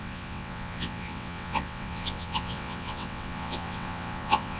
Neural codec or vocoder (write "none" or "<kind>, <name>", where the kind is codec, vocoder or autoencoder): vocoder, WaveNeXt